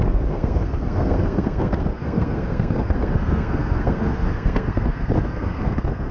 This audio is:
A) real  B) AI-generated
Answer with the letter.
B